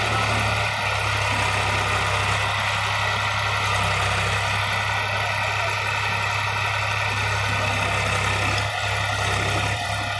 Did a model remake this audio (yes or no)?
no